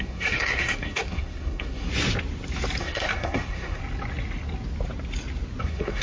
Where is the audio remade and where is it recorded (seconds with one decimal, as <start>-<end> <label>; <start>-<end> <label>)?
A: 0.0-1.9 remade; 1.9-2.8 recorded; 2.8-3.8 remade; 3.8-5.6 recorded; 5.6-6.0 remade